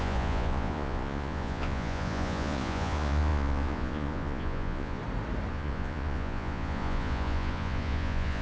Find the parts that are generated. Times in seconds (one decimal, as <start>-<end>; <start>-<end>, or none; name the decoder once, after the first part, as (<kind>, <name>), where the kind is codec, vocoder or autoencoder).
0.0-5.0 (vocoder, Vocos); 5.5-8.4